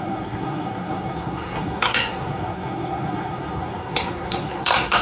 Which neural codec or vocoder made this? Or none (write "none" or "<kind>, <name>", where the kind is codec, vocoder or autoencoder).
codec, SNAC